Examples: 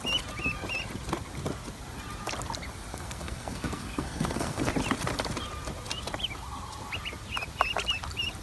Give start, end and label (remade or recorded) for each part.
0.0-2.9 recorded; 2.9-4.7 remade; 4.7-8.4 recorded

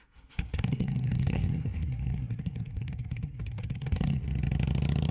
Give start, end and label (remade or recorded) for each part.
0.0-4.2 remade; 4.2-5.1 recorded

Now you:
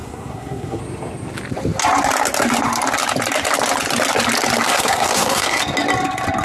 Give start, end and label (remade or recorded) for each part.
0.0-0.8 remade; 0.8-4.7 recorded; 4.7-5.6 remade; 5.6-6.4 recorded